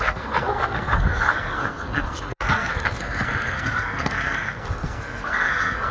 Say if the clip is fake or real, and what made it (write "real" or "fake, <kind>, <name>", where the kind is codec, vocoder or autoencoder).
fake, codec, SNAC